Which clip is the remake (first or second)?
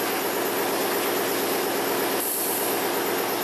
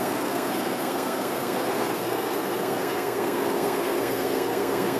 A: second